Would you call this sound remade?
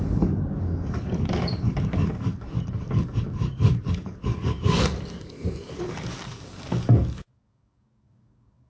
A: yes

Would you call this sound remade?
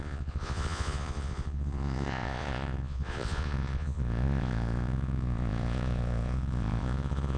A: yes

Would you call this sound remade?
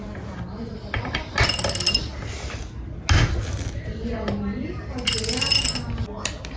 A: no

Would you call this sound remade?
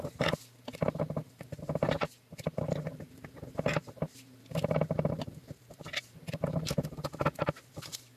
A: yes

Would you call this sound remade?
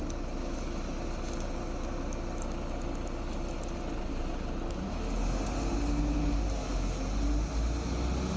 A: no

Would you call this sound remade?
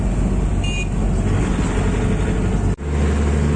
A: no